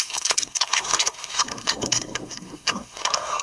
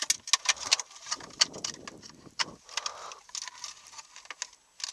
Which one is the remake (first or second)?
first